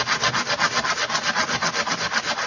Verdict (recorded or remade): recorded